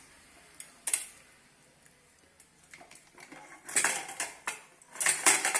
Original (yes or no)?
yes